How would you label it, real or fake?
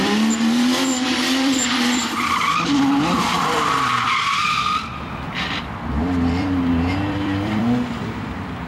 fake